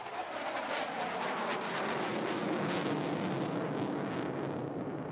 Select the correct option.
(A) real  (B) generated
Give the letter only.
A